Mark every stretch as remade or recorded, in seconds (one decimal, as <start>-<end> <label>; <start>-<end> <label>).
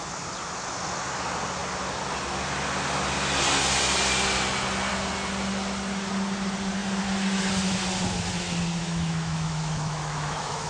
0.0-8.8 recorded; 8.8-10.7 remade